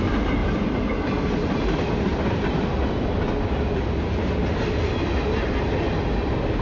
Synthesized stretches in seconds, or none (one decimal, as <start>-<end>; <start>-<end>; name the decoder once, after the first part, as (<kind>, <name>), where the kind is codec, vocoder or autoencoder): 0.4-0.9 (vocoder, BigVGAN v2)